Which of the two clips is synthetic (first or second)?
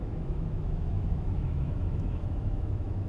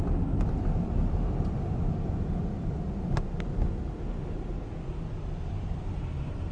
first